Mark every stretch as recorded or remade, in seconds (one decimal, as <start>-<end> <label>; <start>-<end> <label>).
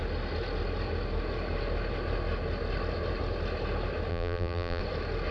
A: 0.0-4.1 recorded; 4.1-4.8 remade; 4.8-5.3 recorded